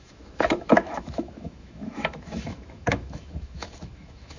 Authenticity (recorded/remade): remade